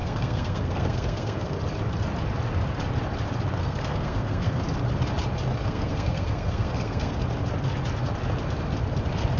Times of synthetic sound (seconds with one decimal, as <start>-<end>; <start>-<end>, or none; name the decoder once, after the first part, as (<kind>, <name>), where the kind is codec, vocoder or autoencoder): 0.0-1.6 (codec, SNAC); 3.6-4.6; 5.5-7.2